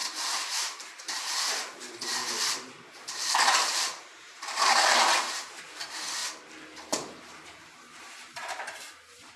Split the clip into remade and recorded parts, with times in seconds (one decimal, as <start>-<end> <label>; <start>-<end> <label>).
0.0-6.2 remade; 6.2-7.2 recorded; 7.2-9.4 remade